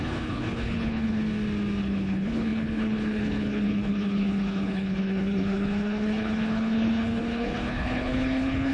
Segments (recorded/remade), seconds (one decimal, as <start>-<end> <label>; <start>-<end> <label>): 0.0-1.2 remade; 1.2-1.8 recorded; 1.8-8.7 remade